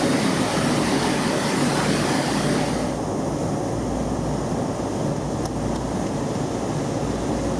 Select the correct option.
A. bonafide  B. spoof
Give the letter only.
A